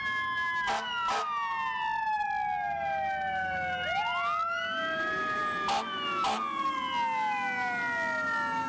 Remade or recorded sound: recorded